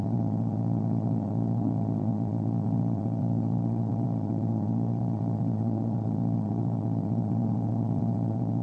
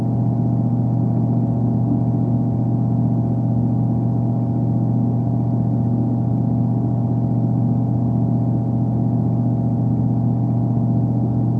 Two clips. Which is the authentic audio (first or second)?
second